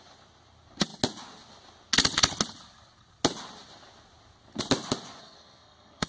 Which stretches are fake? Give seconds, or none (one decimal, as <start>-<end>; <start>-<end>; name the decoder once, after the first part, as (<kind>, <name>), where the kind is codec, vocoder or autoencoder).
5.2-6.1 (codec, SNAC)